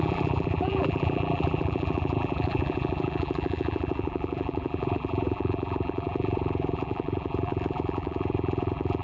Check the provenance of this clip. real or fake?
fake